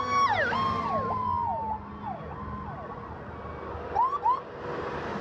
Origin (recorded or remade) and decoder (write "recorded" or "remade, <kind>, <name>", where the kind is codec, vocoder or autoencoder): recorded